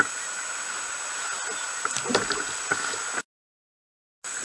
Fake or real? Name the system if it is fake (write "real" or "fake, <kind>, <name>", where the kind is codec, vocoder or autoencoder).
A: real